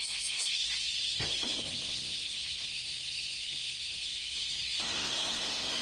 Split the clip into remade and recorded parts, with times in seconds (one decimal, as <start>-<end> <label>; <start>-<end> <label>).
0.0-5.8 remade